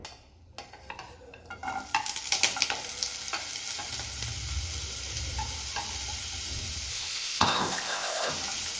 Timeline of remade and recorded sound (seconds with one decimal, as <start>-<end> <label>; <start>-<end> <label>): 0.0-6.9 recorded; 6.9-8.3 remade; 8.3-8.8 recorded